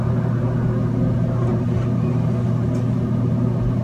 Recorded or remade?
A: recorded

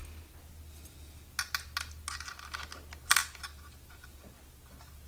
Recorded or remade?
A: recorded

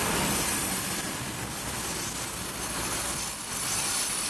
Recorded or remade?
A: recorded